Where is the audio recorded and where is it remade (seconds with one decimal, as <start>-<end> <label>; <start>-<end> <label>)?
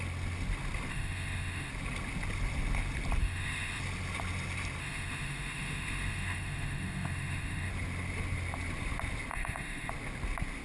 0.0-0.9 recorded; 0.9-1.7 remade; 1.7-3.2 recorded; 3.2-3.8 remade; 3.8-4.8 recorded; 4.8-7.7 remade; 7.7-9.3 recorded; 9.3-9.9 remade; 9.9-10.6 recorded